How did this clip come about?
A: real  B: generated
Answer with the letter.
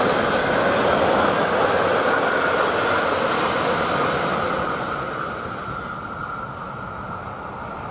A